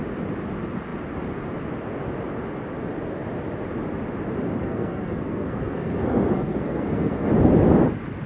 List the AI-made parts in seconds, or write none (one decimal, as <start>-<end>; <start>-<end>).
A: 4.6-7.3